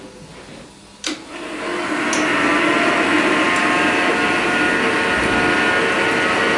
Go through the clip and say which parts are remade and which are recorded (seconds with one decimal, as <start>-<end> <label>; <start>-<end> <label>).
0.0-6.6 recorded